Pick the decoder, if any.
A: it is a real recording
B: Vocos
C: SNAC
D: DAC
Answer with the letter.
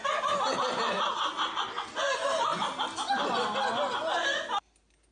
A